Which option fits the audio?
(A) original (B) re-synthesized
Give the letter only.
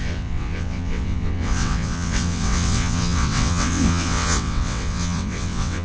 B